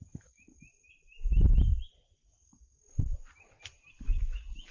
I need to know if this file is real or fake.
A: real